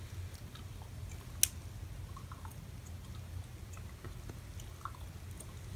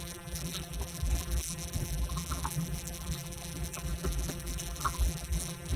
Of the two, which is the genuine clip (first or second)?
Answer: first